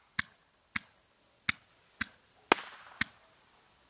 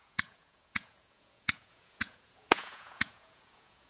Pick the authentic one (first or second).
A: first